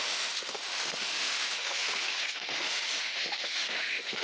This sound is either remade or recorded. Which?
remade